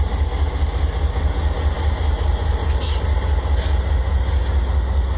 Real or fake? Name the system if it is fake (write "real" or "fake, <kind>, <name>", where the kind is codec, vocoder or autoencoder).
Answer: real